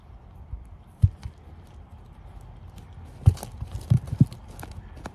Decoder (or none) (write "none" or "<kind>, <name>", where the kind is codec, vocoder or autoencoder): none